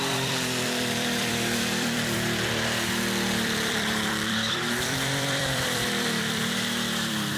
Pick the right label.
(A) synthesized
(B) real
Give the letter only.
A